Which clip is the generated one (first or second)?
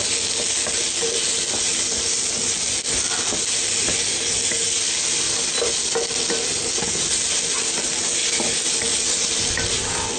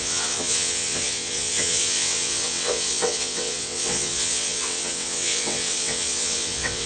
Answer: second